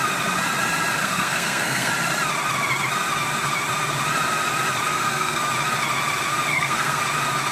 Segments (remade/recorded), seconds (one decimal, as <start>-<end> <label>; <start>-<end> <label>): 0.0-1.0 recorded; 1.0-1.9 remade; 1.9-4.9 recorded; 4.9-5.4 remade; 5.4-6.5 recorded; 6.5-7.0 remade; 7.0-7.5 recorded